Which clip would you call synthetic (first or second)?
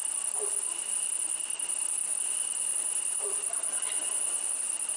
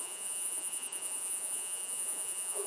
second